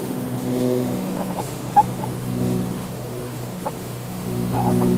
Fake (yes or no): yes